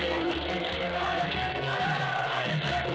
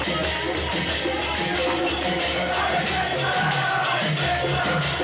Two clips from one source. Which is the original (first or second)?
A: second